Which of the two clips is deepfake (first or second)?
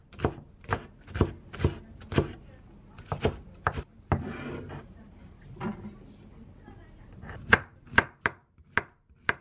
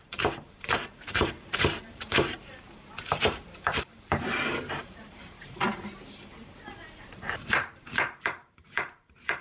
second